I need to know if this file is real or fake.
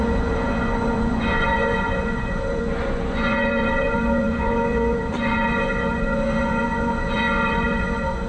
fake